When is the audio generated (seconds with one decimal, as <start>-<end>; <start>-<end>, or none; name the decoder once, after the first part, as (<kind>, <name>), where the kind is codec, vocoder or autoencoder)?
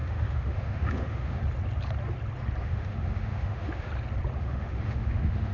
0.0-1.4 (autoencoder, DAC-VAE); 2.6-3.9; 4.4-5.5